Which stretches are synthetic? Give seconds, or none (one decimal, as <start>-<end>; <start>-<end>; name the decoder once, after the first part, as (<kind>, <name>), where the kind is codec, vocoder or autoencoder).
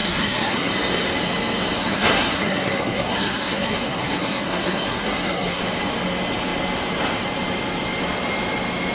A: 0.0-0.7 (codec, SNAC); 1.8-5.6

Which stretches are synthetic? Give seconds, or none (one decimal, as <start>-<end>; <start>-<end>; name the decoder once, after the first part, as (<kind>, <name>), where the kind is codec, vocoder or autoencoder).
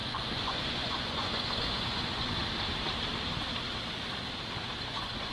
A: 0.0-2.4 (vocoder, Vocos); 4.8-5.3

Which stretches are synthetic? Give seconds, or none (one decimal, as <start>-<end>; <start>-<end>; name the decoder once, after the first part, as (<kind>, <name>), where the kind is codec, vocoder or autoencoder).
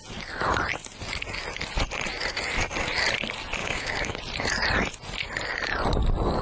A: 3.6-4.2 (codec, DAC)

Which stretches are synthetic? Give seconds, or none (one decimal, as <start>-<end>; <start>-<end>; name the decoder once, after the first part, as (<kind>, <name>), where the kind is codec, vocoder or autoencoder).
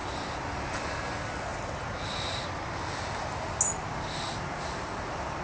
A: none